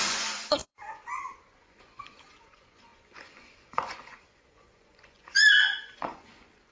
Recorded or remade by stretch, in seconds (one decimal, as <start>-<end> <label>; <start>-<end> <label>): 0.0-6.7 remade